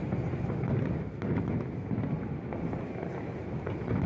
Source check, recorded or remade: recorded